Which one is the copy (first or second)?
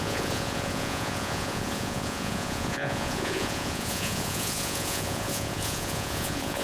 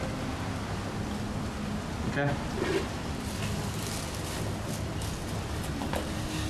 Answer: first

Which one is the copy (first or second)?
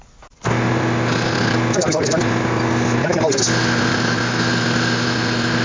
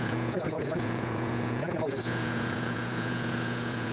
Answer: second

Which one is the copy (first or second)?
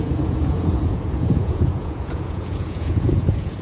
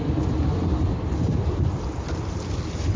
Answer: first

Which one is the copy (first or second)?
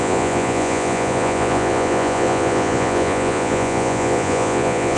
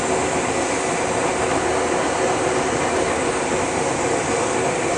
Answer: first